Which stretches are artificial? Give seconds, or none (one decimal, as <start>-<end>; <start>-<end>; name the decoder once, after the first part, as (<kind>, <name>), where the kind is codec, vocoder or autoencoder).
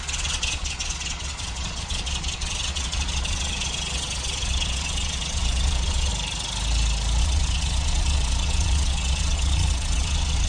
0.0-6.1 (vocoder, Vocos); 7.2-10.5